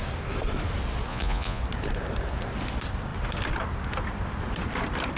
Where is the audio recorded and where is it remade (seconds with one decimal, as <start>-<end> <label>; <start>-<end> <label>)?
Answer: 0.0-1.1 recorded; 1.1-1.6 remade; 1.6-5.2 recorded